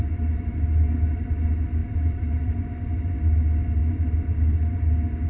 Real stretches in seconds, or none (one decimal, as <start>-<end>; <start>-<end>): 0.0-1.8; 2.7-5.3